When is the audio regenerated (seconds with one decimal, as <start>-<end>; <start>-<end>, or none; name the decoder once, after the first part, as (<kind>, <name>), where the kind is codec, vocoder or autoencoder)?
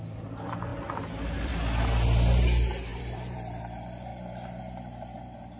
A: 0.7-1.5 (vocoder, BigVGAN v2); 2.9-3.6; 4.1-4.6